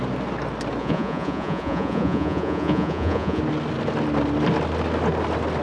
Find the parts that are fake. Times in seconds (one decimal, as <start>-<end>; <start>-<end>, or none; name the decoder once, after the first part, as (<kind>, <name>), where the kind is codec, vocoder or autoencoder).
0.8-3.4 (vocoder, Vocos)